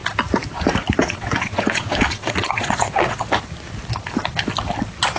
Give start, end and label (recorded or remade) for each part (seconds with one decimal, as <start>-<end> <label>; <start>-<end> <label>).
0.0-1.0 recorded; 1.0-3.3 remade; 3.3-5.2 recorded